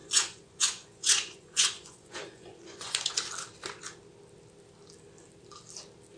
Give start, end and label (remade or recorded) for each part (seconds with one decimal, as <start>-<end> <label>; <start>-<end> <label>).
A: 0.0-3.1 remade; 3.1-6.2 recorded